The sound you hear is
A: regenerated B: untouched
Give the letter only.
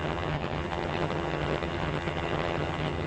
A